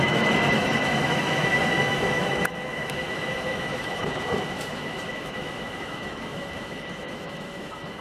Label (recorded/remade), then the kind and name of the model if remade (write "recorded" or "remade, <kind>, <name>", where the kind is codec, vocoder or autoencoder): remade, autoencoder, DAC-VAE